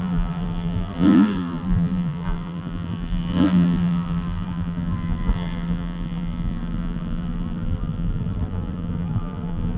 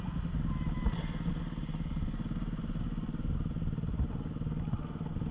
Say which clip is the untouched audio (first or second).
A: second